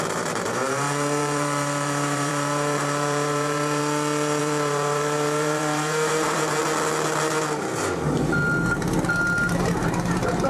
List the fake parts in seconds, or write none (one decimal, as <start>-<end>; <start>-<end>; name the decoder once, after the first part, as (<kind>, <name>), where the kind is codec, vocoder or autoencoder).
0.0-3.8 (vocoder, BigVGAN v2); 4.4-6.6; 9.6-10.5